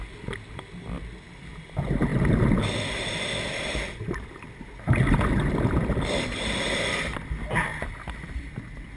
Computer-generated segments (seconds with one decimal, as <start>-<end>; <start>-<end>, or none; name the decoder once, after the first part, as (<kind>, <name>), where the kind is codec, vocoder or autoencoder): 2.1-2.6 (vocoder, BigVGAN v2); 3.5-6.4; 7.7-8.5